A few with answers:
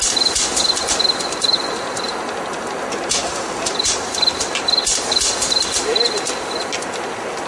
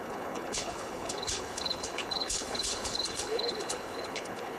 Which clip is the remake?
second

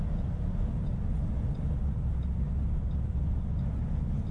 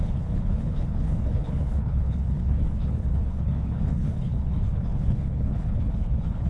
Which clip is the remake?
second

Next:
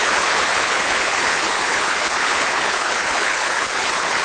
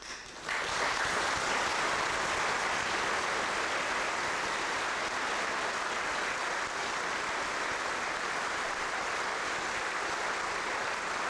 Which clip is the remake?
first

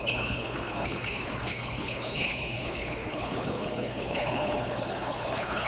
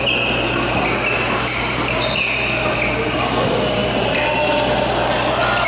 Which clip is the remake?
first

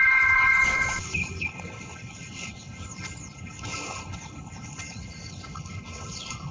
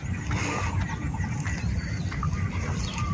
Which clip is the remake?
first